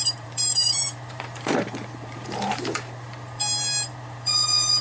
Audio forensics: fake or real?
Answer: fake